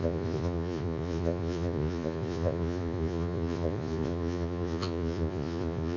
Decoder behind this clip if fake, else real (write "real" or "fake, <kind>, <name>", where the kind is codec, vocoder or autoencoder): fake, vocoder, Vocos